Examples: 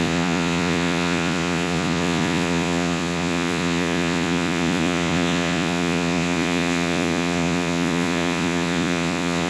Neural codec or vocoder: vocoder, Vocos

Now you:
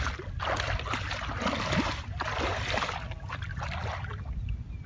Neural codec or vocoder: none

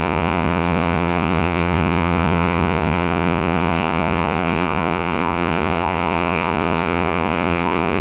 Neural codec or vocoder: vocoder, Vocos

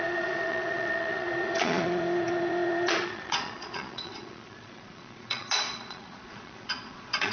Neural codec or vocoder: vocoder, Vocos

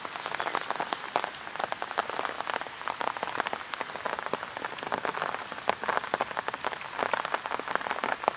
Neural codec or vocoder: none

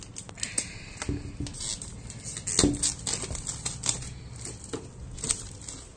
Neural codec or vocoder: none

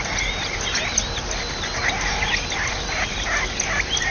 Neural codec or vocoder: none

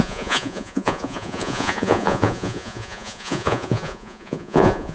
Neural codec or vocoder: vocoder, Vocos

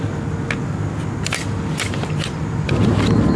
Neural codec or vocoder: none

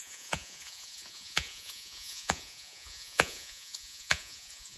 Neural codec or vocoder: vocoder, Vocos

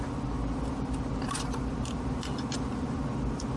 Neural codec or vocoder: none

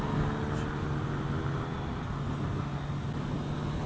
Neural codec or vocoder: none